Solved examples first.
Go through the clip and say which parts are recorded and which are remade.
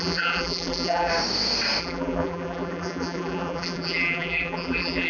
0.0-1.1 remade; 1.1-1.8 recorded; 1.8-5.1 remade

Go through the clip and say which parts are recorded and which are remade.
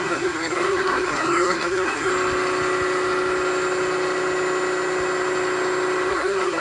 0.0-2.1 remade; 2.1-6.1 recorded; 6.1-6.6 remade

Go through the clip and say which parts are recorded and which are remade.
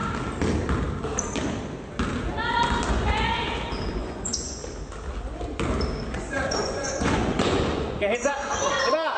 0.0-2.9 recorded; 2.9-3.4 remade; 3.4-3.9 recorded; 3.9-4.6 remade; 4.6-6.1 recorded; 6.1-9.2 remade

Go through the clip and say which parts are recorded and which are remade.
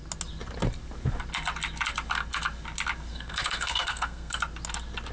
0.0-3.1 recorded; 3.1-4.4 remade; 4.4-5.1 recorded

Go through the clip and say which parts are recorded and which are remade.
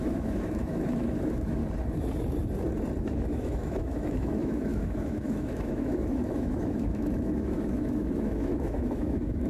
0.0-1.6 remade; 1.6-3.0 recorded; 3.0-9.5 remade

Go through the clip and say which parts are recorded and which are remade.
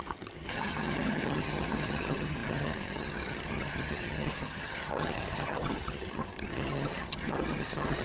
0.0-8.0 remade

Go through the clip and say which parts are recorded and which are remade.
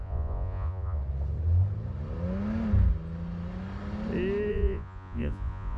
0.0-1.0 remade; 1.0-4.5 recorded; 4.5-5.8 remade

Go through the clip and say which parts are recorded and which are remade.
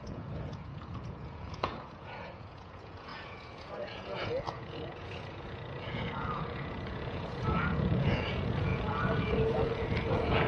0.0-10.5 remade